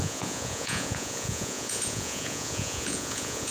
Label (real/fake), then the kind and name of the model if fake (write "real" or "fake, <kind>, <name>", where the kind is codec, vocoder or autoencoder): fake, vocoder, Vocos